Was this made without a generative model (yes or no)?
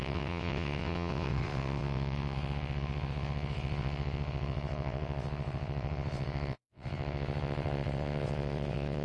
no